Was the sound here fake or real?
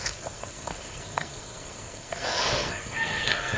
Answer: fake